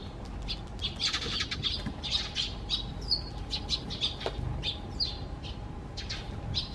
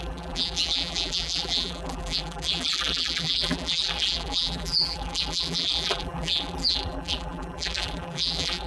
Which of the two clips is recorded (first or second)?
first